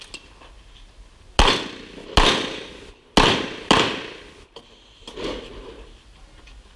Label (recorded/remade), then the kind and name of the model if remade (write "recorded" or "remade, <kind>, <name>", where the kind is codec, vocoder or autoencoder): recorded